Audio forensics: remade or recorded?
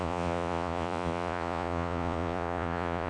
remade